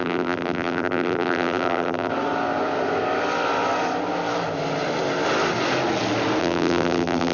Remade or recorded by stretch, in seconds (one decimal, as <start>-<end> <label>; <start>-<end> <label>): 0.0-2.1 remade; 2.1-6.4 recorded; 6.4-7.3 remade